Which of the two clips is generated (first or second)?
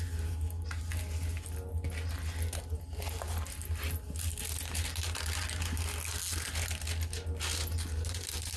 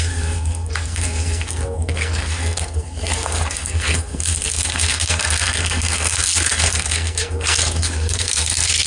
second